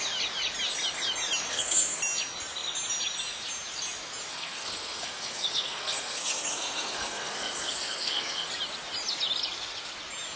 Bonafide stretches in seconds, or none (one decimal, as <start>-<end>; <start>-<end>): 0.0-1.5; 2.0-4.3; 8.5-10.4